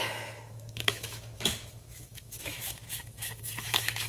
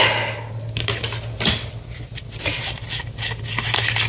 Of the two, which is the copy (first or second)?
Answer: first